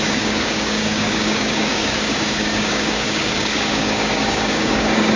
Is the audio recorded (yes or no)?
no